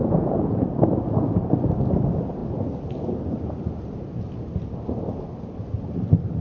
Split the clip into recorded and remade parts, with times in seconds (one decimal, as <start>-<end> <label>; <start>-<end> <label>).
0.0-0.9 remade; 0.9-6.4 recorded